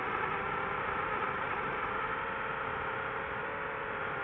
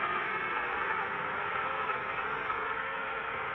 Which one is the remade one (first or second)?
second